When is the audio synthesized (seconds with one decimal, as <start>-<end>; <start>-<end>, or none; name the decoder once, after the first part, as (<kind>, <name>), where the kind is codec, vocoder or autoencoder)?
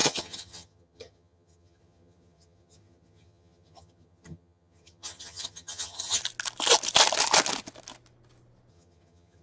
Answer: 0.0-6.2 (vocoder, HiFi-GAN); 8.7-9.4